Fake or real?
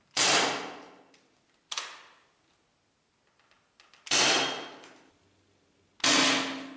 real